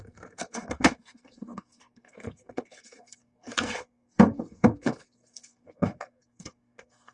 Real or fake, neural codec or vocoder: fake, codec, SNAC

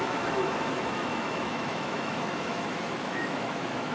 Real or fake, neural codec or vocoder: fake, autoencoder, DAC-VAE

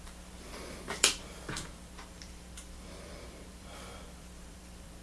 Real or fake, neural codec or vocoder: fake, vocoder, BigVGAN v2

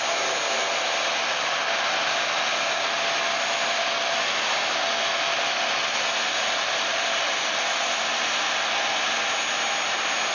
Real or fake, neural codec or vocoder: real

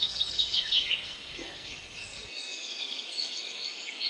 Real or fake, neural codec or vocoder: fake, codec, SNAC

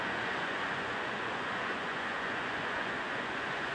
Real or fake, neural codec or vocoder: fake, vocoder, Vocos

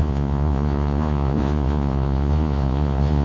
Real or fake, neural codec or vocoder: fake, vocoder, Vocos